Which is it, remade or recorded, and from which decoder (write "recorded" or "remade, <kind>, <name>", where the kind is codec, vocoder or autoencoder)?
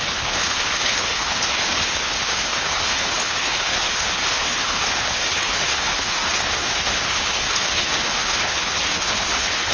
remade, codec, HILCodec